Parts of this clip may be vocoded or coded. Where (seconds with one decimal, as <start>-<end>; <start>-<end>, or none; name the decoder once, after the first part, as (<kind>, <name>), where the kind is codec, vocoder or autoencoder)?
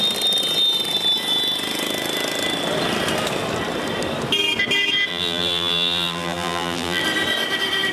5.1-7.0 (vocoder, BigVGAN v2)